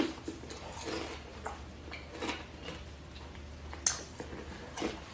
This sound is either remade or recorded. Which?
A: recorded